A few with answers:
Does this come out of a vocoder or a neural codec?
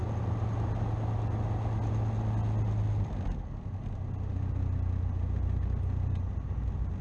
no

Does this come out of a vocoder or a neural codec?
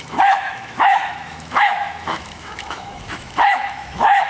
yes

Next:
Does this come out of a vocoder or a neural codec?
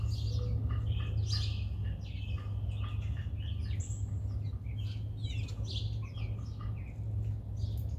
no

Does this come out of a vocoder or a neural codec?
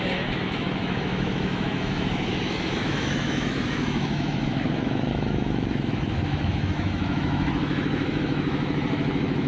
yes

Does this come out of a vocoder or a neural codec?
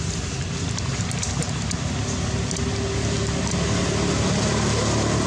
no